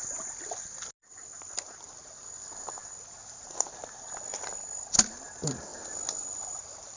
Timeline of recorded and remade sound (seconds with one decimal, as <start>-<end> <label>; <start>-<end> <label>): 0.0-7.0 recorded